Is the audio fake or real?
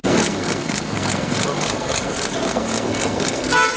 fake